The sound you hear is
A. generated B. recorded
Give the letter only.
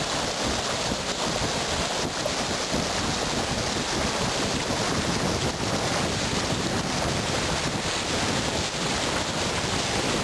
B